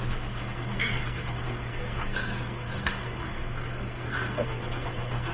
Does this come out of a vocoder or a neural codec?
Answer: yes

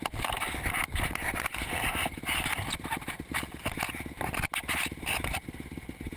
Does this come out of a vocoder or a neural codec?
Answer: no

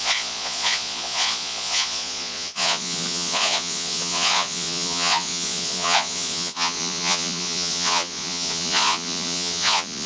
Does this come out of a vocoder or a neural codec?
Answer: yes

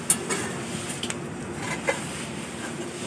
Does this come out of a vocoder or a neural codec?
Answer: no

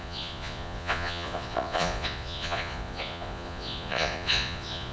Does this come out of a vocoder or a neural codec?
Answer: yes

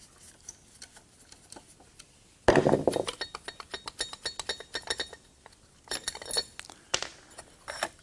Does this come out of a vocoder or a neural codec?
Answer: no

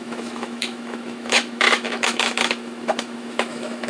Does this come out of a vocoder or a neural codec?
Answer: yes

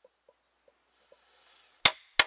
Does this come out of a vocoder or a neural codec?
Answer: no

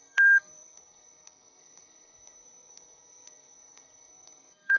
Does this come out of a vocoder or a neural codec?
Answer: yes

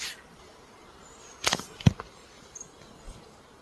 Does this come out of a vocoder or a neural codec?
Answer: no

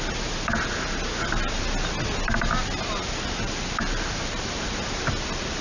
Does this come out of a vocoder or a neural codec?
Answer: no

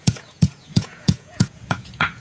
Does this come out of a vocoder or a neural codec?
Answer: yes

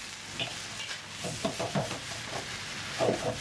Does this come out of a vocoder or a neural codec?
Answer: no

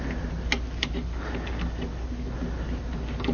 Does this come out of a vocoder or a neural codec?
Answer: no